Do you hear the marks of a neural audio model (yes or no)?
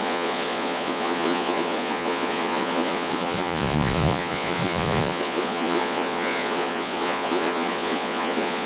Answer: yes